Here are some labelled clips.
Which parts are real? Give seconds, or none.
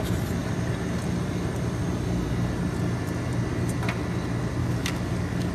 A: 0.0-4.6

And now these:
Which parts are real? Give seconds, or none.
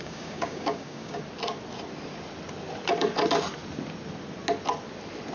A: 1.2-5.3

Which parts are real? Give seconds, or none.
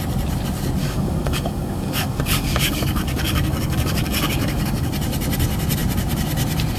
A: 0.0-0.8; 4.9-6.8